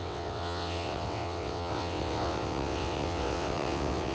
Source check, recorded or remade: remade